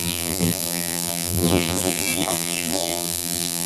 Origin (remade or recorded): remade